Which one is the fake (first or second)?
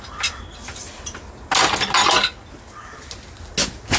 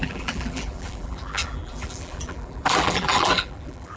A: second